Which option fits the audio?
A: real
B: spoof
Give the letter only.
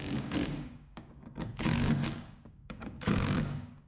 B